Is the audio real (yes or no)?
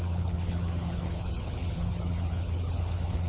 no